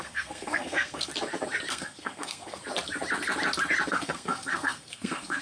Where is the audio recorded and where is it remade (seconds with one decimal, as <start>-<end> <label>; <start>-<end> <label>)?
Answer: 0.0-1.1 remade; 1.1-1.7 recorded; 1.7-2.6 remade; 2.6-3.9 recorded; 3.9-5.4 remade